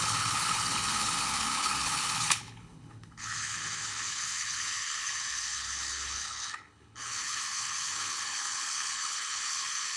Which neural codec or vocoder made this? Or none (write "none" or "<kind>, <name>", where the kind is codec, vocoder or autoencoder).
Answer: codec, HILCodec